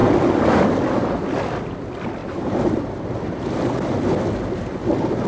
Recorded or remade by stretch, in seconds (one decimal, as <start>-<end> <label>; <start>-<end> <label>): 0.0-0.5 remade; 0.5-2.2 recorded; 2.2-3.6 remade; 3.6-5.3 recorded